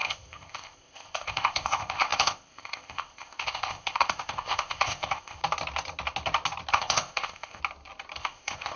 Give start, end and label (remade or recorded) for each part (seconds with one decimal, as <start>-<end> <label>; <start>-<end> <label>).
0.0-5.4 remade; 5.4-6.7 recorded; 6.7-7.6 remade; 7.6-8.2 recorded; 8.2-8.8 remade